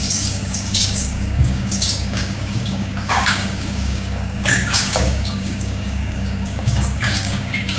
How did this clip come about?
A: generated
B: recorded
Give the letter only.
A